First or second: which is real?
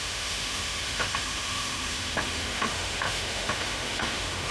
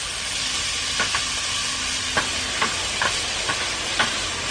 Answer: second